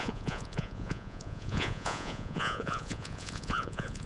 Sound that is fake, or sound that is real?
fake